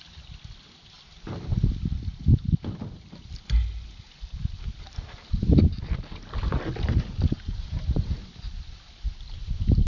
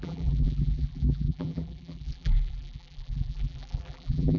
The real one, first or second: first